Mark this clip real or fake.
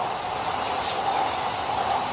real